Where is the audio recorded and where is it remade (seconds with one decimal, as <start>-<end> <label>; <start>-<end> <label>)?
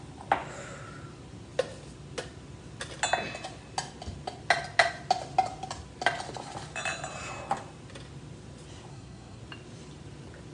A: 0.0-8.9 recorded; 8.9-9.4 remade; 9.4-10.5 recorded